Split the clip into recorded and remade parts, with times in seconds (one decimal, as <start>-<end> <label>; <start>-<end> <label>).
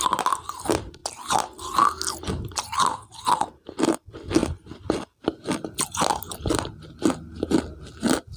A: 0.0-8.4 recorded